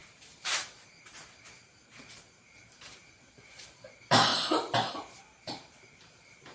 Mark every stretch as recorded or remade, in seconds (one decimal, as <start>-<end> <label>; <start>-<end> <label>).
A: 0.0-4.3 remade; 4.3-4.9 recorded; 4.9-6.5 remade